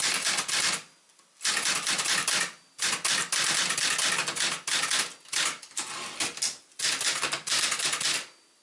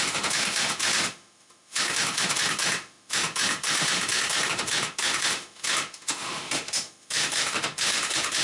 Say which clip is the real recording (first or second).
first